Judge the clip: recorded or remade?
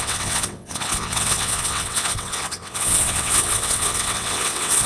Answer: remade